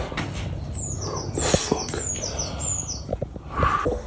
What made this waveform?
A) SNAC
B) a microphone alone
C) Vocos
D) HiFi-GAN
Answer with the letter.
B